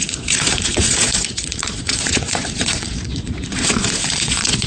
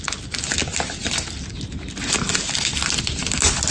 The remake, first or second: first